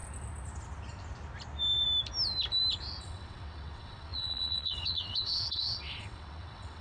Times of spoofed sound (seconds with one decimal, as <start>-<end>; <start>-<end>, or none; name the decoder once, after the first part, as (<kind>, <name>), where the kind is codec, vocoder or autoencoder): 3.0-6.8 (vocoder, WaveNeXt)